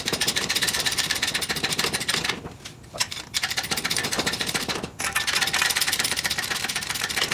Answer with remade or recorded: recorded